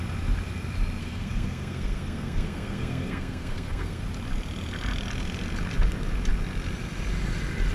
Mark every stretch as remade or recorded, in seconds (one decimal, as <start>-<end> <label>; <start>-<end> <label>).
0.0-1.0 recorded; 1.0-4.0 remade; 4.0-7.7 recorded